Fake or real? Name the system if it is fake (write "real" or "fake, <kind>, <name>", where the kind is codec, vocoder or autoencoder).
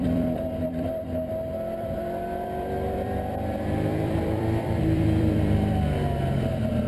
fake, vocoder, BigVGAN v2